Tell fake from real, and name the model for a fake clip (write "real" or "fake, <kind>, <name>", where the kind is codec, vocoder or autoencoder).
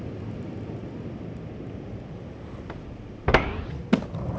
real